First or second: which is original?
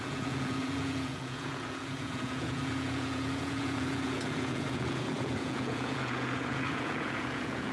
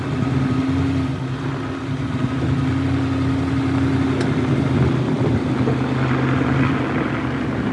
second